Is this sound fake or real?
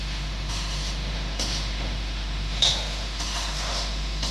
fake